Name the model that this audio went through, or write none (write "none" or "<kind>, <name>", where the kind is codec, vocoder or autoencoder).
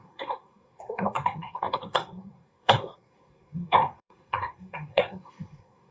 codec, SNAC